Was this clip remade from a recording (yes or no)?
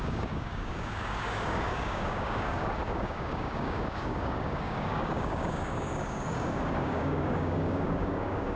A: yes